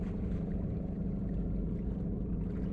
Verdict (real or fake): fake